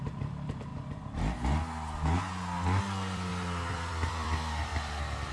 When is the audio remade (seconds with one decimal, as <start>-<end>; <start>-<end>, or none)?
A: 0.0-0.7; 2.8-5.3